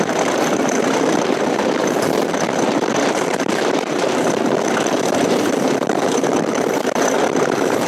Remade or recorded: remade